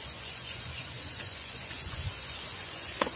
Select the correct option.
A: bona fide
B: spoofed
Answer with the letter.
B